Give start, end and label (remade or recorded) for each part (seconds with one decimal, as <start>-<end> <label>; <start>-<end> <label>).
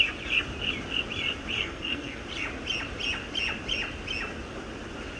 0.0-1.6 recorded; 1.6-2.2 remade; 2.2-5.2 recorded